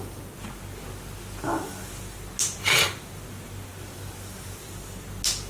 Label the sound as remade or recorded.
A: recorded